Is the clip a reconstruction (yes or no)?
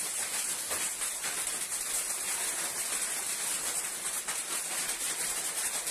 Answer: no